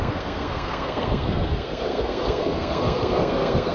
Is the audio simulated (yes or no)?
yes